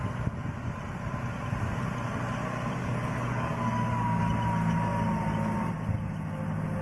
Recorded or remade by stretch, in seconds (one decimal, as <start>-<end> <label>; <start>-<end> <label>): 0.0-2.8 recorded; 2.8-4.2 remade; 4.2-6.8 recorded